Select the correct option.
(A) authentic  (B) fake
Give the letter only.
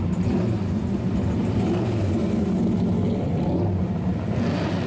A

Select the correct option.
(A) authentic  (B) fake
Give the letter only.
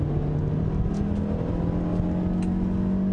A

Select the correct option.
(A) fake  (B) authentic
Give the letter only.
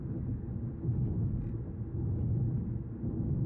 B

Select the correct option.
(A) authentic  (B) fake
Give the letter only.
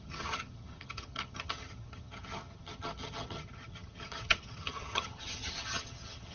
B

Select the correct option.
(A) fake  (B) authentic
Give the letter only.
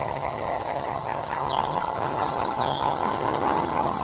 A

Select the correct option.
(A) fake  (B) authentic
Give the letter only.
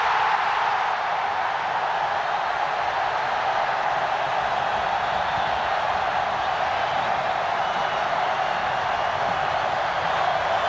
B